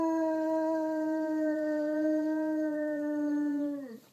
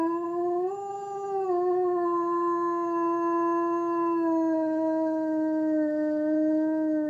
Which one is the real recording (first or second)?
second